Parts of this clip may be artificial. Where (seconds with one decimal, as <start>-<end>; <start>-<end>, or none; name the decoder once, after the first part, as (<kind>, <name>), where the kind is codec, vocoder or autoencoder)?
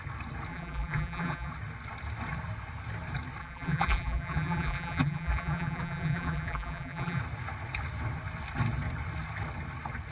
0.5-1.5 (vocoder, BigVGAN v2); 3.4-7.2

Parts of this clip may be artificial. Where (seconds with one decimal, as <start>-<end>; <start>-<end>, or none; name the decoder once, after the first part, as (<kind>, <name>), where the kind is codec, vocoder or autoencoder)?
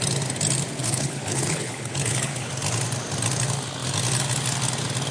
0.8-2.5 (codec, HILCodec)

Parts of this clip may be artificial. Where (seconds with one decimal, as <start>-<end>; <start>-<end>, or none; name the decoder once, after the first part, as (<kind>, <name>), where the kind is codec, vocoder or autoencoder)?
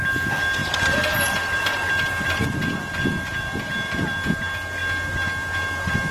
0.6-4.3 (vocoder, BigVGAN v2)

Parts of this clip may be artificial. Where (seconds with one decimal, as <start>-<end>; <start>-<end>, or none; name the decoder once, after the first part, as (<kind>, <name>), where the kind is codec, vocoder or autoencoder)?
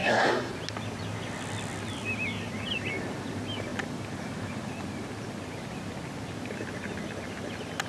0.0-0.5 (codec, SNAC)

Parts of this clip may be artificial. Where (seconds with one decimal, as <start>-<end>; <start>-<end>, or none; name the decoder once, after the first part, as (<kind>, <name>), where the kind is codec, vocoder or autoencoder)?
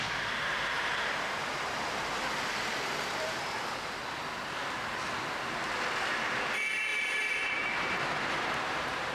1.5-4.0 (vocoder, BigVGAN v2); 6.9-7.5